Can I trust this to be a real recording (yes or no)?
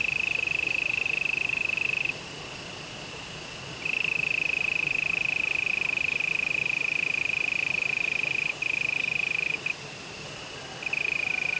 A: yes